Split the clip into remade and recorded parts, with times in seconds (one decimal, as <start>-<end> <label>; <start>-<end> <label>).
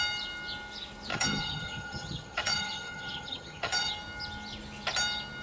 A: 0.0-1.1 recorded; 1.1-3.9 remade; 3.9-5.4 recorded